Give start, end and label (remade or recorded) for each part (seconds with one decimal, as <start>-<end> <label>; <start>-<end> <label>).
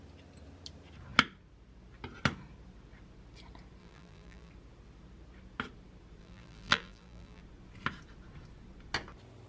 0.0-3.8 recorded; 3.8-4.5 remade; 4.5-6.2 recorded; 6.2-7.4 remade; 7.4-9.5 recorded